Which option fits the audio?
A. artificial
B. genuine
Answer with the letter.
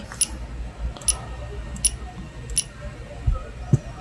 B